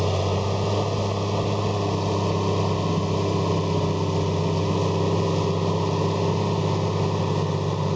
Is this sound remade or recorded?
recorded